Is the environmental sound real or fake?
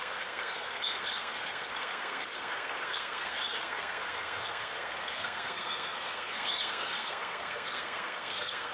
fake